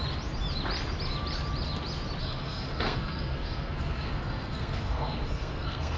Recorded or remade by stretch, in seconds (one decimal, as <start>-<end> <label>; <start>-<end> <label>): 0.0-2.2 recorded; 2.2-6.0 remade